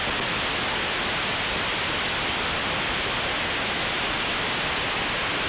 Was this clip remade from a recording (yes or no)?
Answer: no